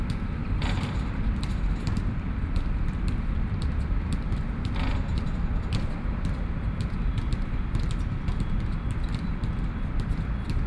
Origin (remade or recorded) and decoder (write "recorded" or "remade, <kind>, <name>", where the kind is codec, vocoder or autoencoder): remade, vocoder, BigVGAN v2